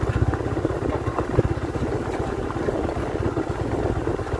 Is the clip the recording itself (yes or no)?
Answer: yes